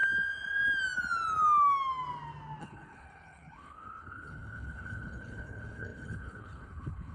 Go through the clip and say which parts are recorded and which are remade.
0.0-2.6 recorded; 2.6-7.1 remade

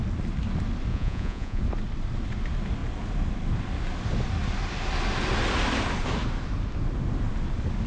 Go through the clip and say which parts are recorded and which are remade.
0.0-0.9 recorded; 0.9-1.6 remade; 1.6-7.9 recorded

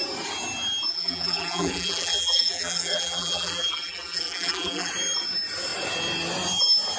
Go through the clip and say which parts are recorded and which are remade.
0.0-0.9 recorded; 0.9-4.9 remade; 4.9-7.0 recorded

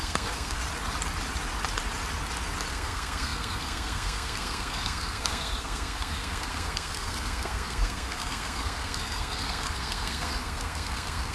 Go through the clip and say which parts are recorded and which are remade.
0.0-0.6 remade; 0.6-2.7 recorded; 2.7-11.3 remade